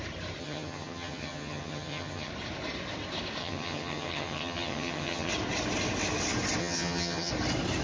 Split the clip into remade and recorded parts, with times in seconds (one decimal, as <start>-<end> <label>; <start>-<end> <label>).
0.0-0.4 recorded; 0.4-2.3 remade; 2.3-3.4 recorded; 3.4-5.3 remade; 5.3-6.6 recorded; 6.6-7.3 remade; 7.3-7.8 recorded